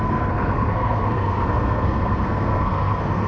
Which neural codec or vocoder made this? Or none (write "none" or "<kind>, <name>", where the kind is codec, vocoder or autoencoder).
codec, SNAC